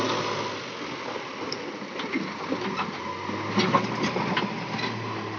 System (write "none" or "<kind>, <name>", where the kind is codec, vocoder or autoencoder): none